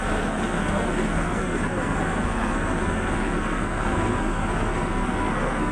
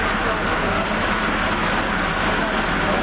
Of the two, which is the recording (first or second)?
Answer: second